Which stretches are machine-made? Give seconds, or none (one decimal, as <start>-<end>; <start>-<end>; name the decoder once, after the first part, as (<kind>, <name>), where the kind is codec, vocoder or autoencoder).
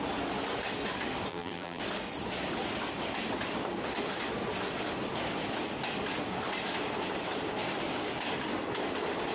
1.3-1.8 (vocoder, BigVGAN v2)